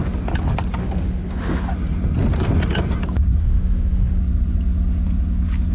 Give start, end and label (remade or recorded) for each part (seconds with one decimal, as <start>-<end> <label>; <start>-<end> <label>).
0.0-0.8 recorded; 0.8-1.6 remade; 1.6-3.4 recorded; 3.4-4.2 remade; 4.2-5.7 recorded